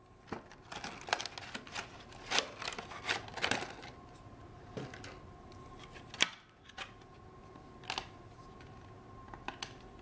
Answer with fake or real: real